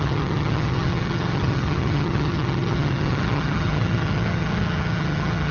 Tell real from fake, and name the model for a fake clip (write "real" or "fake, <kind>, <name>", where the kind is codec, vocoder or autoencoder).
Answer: fake, vocoder, HiFi-GAN